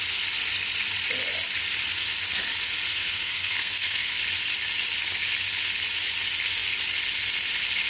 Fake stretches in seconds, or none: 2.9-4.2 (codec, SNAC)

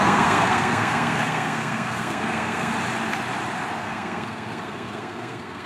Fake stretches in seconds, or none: 0.0-2.7 (codec, SNAC); 3.8-5.7

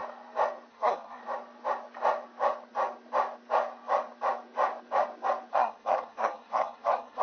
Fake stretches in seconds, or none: 0.7-1.2 (codec, SNAC); 5.5-7.2

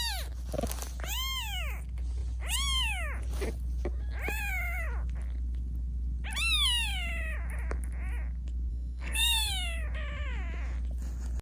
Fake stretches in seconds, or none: 8.7-9.5 (codec, SNAC)

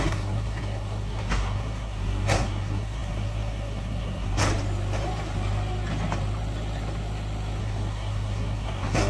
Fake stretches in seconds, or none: 0.0-4.4 (codec, SNAC); 7.6-9.1